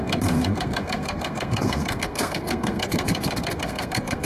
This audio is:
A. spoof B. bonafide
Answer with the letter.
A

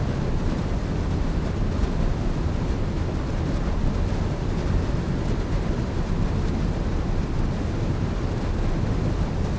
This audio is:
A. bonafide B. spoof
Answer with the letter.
A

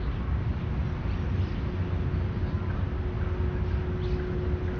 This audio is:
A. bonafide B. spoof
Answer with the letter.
A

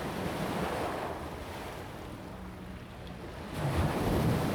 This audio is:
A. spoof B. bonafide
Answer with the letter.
B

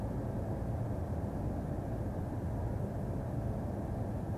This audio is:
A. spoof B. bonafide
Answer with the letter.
B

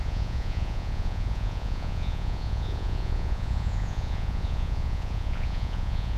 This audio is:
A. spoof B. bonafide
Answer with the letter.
A